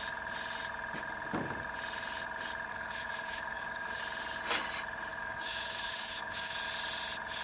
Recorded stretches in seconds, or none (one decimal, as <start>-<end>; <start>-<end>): 0.0-2.7; 4.0-5.1; 6.5-7.4

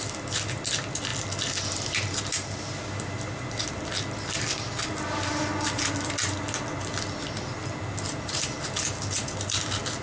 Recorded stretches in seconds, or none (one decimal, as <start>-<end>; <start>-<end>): 0.0-10.0

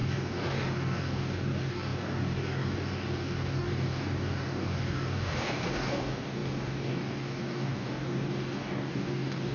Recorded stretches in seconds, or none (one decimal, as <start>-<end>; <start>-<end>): none

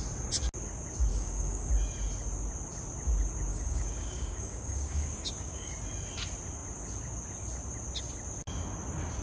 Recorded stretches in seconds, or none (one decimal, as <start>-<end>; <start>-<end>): 0.0-1.1; 1.7-3.5; 5.7-9.2

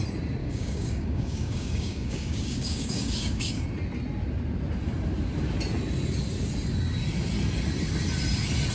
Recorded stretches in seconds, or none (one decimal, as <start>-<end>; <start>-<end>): 0.0-0.4; 3.6-8.7

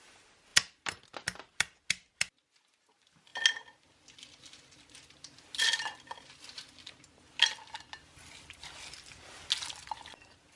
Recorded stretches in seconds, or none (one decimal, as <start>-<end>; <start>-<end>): 0.0-10.6

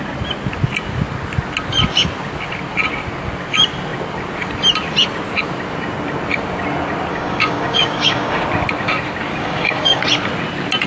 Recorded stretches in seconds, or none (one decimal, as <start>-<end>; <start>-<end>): 0.0-7.1; 8.4-9.3; 10.0-10.9